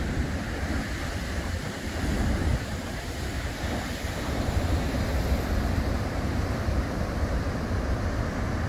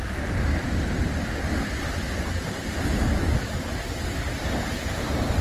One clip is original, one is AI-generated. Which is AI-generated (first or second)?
first